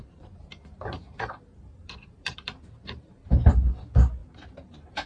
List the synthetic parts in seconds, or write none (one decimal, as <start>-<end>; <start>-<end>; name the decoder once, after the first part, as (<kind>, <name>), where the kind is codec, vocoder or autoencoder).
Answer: 0.4-3.5 (vocoder, BigVGAN v2); 4.2-5.1